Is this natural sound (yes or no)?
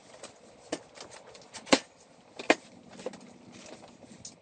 yes